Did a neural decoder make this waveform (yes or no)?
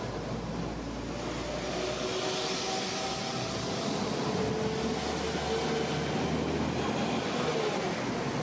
no